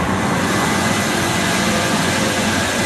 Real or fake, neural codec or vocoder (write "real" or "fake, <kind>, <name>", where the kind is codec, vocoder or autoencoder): fake, vocoder, Vocos